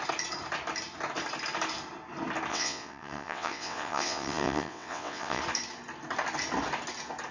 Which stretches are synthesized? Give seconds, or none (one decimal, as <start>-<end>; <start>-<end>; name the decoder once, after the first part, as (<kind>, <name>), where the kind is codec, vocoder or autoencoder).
2.5-5.4 (vocoder, WaveNeXt)